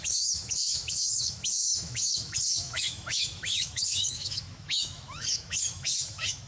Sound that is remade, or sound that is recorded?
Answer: remade